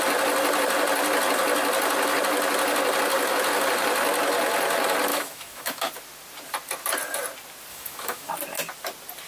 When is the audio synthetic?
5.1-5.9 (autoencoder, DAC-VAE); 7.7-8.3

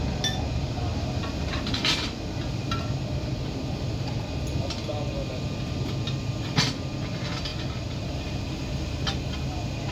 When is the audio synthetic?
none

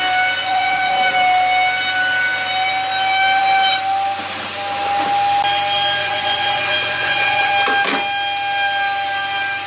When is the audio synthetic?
0.4-1.1 (vocoder, Vocos); 6.0-7.5